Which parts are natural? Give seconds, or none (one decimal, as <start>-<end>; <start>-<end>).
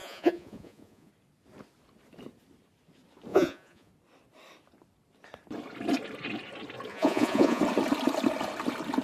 1.1-3.3; 3.9-6.9; 7.6-9.0